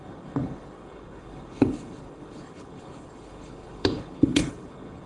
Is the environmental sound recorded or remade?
remade